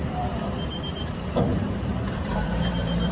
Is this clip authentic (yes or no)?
no